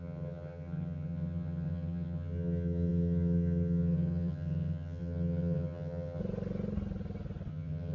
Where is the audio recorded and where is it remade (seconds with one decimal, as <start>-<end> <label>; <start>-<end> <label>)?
0.0-6.2 remade; 6.2-7.5 recorded; 7.5-7.9 remade